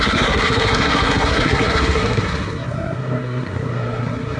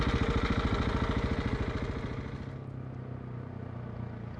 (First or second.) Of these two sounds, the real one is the second